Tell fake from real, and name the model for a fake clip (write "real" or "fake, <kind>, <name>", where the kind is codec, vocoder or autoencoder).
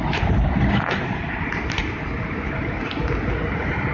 real